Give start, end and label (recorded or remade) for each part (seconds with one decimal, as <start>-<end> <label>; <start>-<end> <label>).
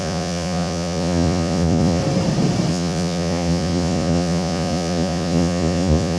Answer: 0.0-2.0 remade; 2.0-2.7 recorded; 2.7-6.2 remade